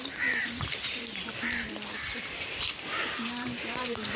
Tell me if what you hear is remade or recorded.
remade